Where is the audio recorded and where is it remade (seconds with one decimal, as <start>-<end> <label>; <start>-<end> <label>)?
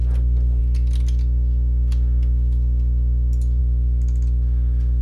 0.0-5.0 recorded